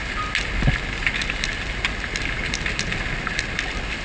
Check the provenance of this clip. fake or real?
real